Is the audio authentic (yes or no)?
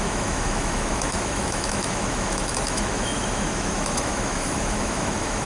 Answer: no